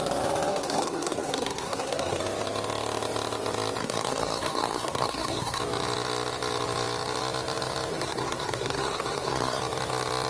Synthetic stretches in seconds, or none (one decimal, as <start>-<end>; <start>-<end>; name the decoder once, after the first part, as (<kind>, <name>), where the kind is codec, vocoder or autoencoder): 0.5-2.2 (codec, SNAC); 3.8-5.6; 7.9-9.6